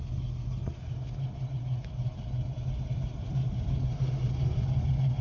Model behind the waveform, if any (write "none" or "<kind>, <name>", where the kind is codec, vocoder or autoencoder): none